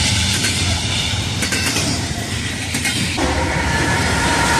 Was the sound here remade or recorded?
remade